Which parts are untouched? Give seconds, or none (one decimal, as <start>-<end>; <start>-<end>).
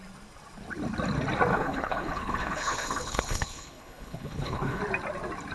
0.0-1.5; 4.8-5.5